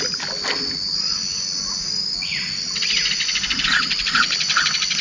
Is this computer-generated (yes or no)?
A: no